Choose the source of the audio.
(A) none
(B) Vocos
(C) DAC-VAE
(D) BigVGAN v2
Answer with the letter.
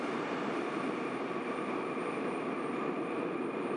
D